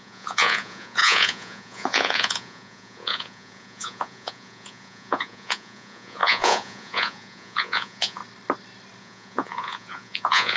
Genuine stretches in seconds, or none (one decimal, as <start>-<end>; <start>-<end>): 8.2-9.0